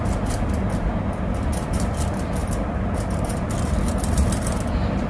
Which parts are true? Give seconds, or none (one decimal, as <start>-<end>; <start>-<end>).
0.0-5.1